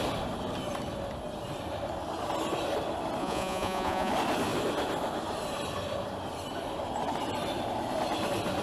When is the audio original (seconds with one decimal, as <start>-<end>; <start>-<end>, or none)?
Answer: 0.0-3.2; 4.1-8.6